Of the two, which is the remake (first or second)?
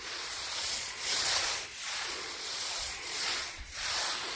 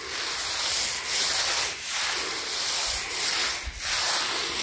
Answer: first